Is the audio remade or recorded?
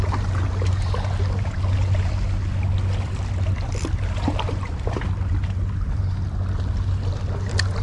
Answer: recorded